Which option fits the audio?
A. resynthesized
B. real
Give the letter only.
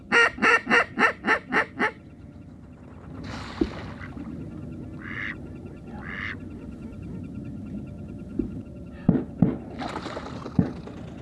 B